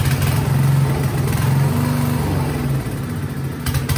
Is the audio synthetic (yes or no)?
no